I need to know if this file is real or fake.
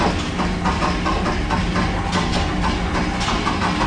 real